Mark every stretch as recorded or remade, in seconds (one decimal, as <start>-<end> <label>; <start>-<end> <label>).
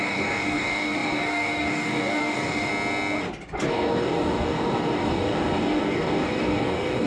0.0-2.7 remade; 2.7-3.7 recorded; 3.7-7.1 remade